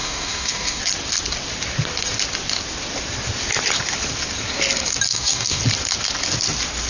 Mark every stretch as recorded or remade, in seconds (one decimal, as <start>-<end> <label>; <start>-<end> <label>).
0.0-0.8 remade; 0.8-5.1 recorded; 5.1-5.6 remade; 5.6-6.9 recorded